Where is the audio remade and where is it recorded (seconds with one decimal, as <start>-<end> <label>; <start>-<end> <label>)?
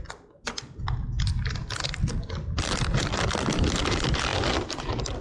0.0-5.2 recorded